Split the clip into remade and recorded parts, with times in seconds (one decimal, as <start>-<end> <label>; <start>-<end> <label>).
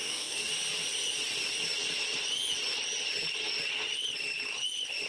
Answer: 0.0-0.5 remade; 0.5-5.1 recorded